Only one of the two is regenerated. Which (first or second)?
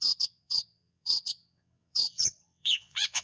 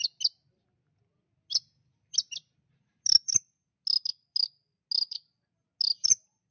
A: first